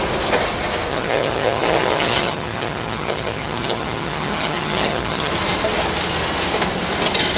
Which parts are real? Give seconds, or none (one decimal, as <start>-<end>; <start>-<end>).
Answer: 0.0-0.9; 5.3-7.4